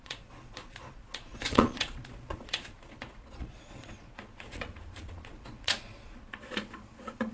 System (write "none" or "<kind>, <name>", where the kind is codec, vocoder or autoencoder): vocoder, Vocos